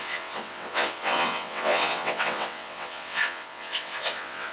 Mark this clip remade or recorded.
remade